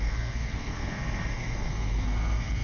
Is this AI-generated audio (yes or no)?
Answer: yes